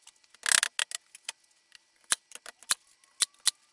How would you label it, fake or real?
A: real